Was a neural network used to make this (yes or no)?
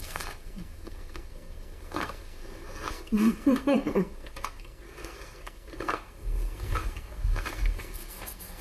yes